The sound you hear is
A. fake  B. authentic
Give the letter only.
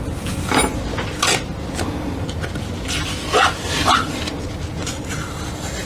B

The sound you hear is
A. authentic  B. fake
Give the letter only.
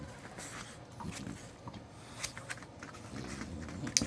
A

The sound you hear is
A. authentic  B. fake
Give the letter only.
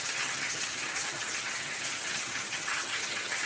B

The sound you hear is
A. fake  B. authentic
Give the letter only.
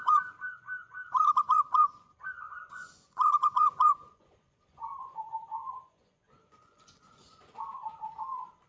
A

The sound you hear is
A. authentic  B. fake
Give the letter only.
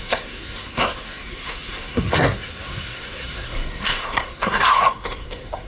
B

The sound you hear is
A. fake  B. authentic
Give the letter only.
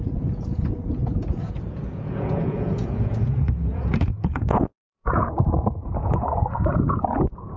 A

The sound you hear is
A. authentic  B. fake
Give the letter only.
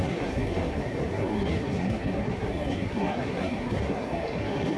B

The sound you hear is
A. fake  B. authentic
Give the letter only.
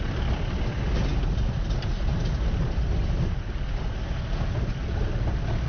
B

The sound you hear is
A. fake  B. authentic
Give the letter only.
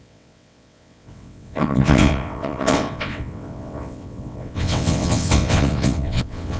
A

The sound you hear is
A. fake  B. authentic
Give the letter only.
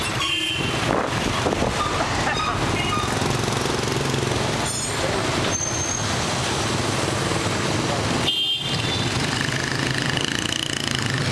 B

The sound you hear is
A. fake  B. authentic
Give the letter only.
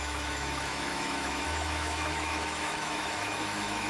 A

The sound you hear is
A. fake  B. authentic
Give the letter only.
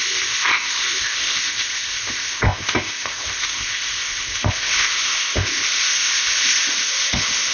A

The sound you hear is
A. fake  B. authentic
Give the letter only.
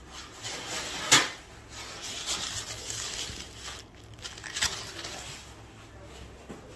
B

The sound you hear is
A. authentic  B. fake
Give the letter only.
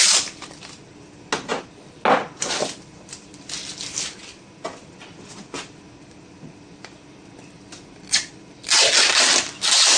A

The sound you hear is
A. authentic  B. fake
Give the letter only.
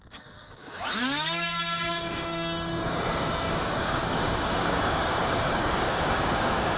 B